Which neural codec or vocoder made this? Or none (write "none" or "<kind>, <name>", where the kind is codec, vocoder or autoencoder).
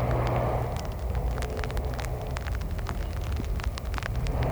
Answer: none